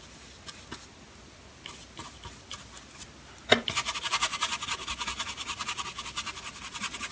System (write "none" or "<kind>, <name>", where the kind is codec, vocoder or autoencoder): none